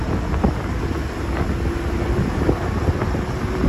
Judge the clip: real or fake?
real